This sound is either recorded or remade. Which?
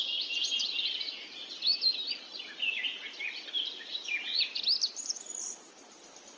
remade